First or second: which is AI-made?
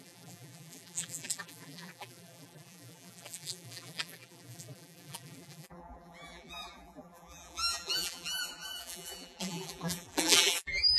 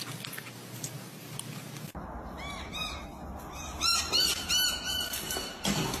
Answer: first